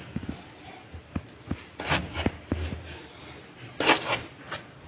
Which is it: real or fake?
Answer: real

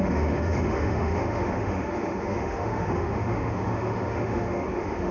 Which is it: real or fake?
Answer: fake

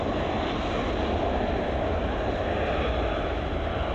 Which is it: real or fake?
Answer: real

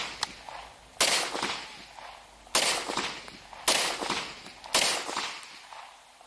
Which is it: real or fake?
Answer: real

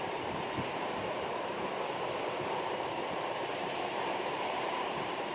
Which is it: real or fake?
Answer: fake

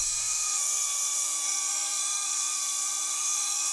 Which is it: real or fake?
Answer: fake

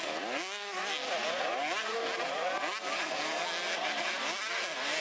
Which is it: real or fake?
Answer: real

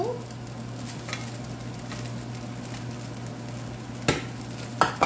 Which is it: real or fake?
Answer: real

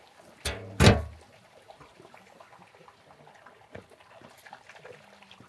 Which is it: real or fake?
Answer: real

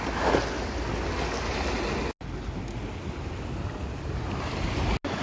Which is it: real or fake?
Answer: real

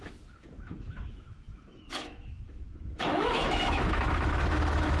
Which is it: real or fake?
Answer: fake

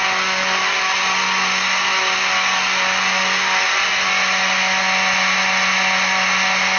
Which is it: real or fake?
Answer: real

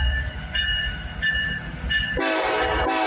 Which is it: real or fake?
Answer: real